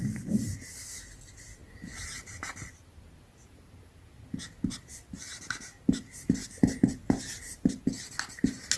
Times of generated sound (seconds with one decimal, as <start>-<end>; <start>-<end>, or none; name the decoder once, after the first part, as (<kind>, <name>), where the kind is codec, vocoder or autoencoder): none